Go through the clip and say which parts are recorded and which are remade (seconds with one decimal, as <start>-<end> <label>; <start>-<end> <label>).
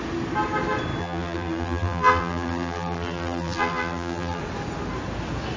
0.0-1.0 recorded; 1.0-4.4 remade; 4.4-5.6 recorded